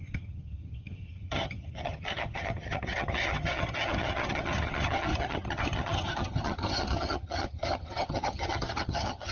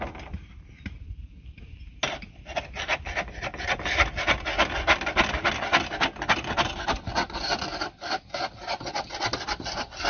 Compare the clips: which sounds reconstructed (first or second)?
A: first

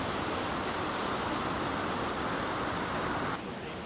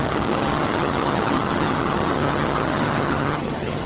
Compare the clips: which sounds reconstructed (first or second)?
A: second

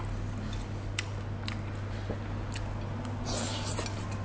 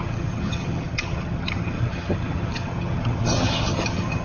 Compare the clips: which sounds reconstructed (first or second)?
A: second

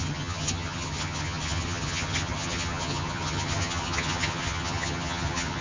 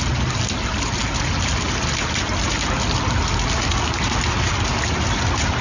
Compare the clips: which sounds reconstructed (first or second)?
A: first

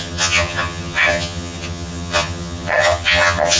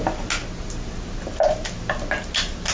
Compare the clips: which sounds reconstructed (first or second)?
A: first